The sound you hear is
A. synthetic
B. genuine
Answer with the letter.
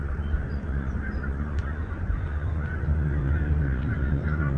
A